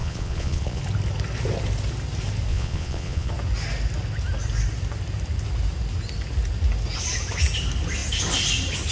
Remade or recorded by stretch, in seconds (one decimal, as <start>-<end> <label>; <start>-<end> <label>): 0.0-0.8 remade; 0.8-2.5 recorded; 2.5-3.3 remade; 3.3-8.9 recorded